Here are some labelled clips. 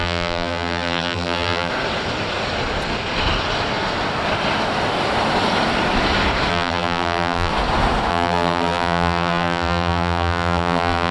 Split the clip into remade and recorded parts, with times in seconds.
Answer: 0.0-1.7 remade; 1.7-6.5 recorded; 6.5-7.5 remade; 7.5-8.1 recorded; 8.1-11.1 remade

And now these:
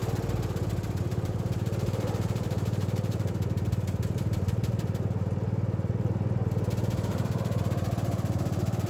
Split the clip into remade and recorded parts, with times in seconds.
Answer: 0.0-1.1 recorded; 1.1-3.3 remade; 3.3-7.1 recorded; 7.1-7.6 remade; 7.6-8.9 recorded

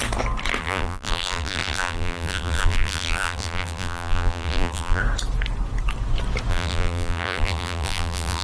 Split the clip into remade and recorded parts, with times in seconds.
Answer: 0.0-0.6 recorded; 0.6-5.0 remade; 5.0-6.5 recorded; 6.5-8.4 remade

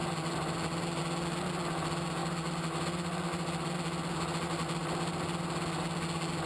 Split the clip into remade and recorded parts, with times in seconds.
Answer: 0.0-6.5 recorded